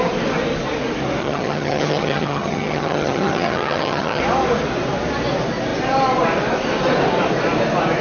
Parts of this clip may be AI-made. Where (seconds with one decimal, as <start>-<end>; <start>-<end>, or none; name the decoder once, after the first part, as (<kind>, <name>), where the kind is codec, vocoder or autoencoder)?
1.2-4.2 (vocoder, HiFi-GAN)